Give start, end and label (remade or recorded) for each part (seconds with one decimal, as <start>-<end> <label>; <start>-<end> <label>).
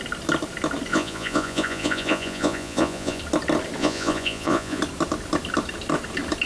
0.0-0.9 recorded; 0.9-3.2 remade; 3.2-3.8 recorded; 3.8-4.8 remade; 4.8-6.5 recorded